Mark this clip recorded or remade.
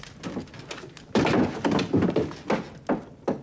recorded